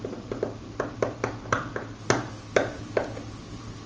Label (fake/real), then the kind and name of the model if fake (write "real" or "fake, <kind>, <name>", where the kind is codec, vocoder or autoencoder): real